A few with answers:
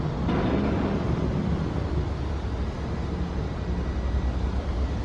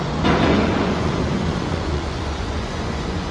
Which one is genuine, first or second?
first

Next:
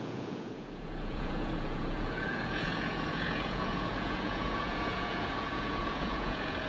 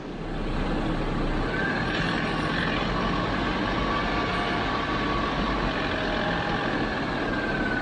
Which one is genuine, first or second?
second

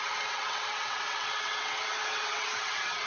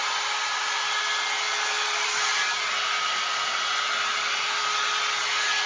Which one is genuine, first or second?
second